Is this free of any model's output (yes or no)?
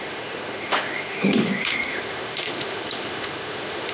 no